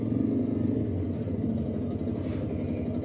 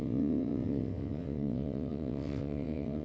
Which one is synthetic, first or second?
second